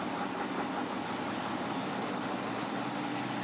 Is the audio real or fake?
real